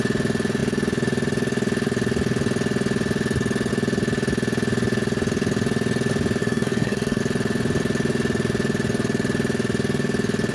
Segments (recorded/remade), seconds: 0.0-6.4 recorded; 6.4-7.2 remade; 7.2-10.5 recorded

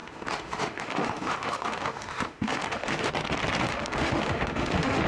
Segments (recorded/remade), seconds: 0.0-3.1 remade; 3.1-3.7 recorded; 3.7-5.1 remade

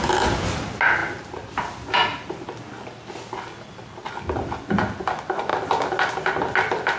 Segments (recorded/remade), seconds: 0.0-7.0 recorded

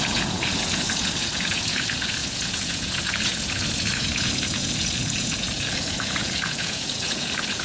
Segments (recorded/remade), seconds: 0.0-7.6 remade

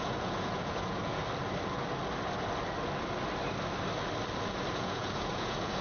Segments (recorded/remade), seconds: 0.0-1.2 remade; 1.2-4.7 recorded; 4.7-5.8 remade

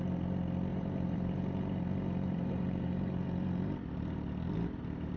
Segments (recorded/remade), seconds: 0.0-0.7 recorded; 0.7-3.8 remade; 3.8-5.2 recorded